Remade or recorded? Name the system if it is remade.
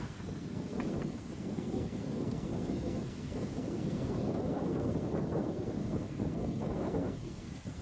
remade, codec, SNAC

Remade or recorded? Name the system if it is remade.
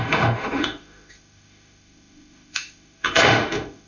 remade, autoencoder, DAC-VAE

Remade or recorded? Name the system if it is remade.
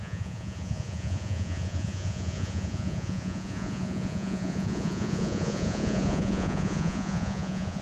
remade, vocoder, Vocos